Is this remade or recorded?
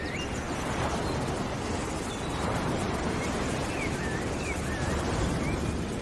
recorded